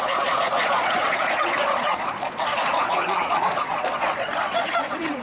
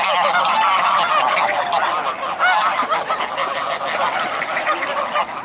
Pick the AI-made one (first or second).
first